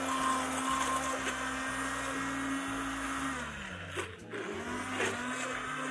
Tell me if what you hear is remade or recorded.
recorded